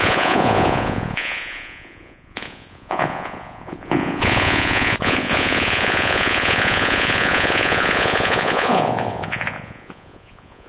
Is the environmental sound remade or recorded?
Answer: remade